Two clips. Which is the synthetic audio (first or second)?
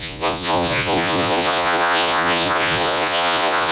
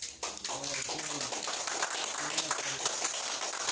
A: first